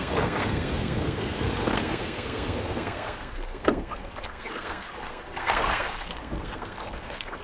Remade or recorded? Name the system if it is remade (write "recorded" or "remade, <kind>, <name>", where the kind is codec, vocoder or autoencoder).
remade, codec, SNAC